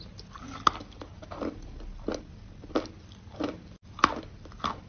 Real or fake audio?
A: real